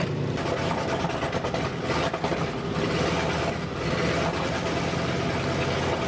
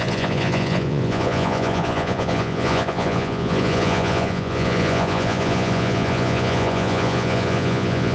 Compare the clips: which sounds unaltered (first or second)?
first